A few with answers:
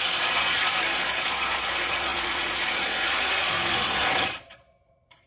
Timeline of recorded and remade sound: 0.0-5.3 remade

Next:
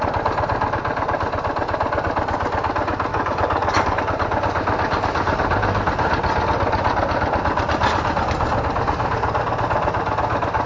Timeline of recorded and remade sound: 0.0-3.1 recorded; 3.1-4.0 remade; 4.0-10.7 recorded

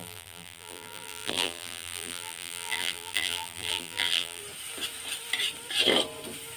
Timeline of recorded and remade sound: 0.0-4.4 remade; 4.4-6.6 recorded